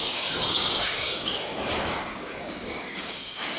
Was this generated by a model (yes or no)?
yes